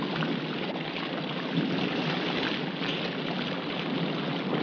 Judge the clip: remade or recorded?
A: recorded